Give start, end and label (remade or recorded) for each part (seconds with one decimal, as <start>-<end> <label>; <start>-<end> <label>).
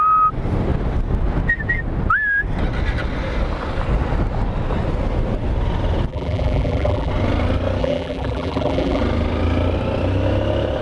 0.0-6.1 recorded; 6.1-7.1 remade; 7.1-7.8 recorded; 7.8-9.0 remade; 9.0-10.8 recorded